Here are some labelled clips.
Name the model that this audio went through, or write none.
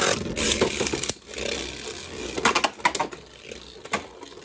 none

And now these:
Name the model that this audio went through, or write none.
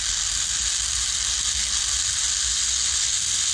none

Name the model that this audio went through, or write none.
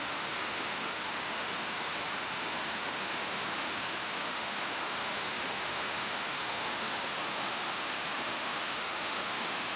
autoencoder, DAC-VAE